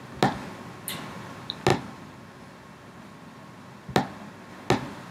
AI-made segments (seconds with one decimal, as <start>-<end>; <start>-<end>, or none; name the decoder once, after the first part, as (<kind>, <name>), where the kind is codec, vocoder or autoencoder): none